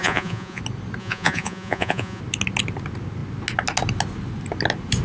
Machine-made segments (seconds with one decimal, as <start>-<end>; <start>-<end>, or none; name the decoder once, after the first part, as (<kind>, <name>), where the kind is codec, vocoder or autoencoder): 0.0-0.6 (vocoder, Vocos); 1.0-2.2